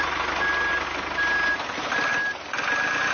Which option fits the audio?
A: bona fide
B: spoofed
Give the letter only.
A